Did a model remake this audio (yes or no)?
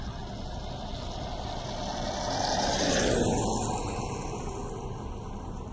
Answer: no